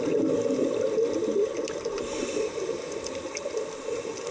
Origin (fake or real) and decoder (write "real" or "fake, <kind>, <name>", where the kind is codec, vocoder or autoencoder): real